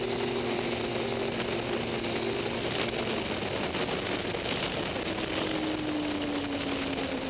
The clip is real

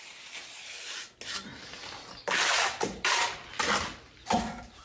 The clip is real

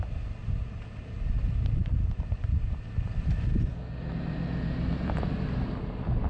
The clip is real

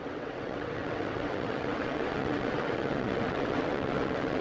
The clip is fake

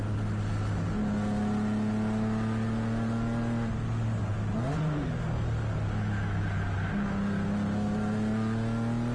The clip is real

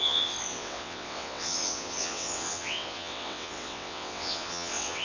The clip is fake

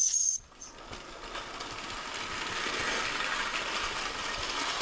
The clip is real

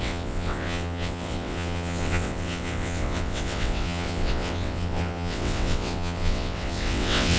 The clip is fake